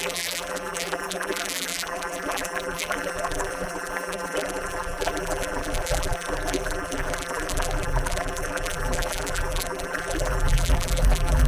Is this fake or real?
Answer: fake